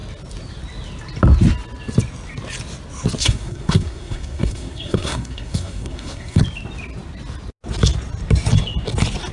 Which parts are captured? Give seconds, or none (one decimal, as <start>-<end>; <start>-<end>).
0.0-3.2; 6.4-9.3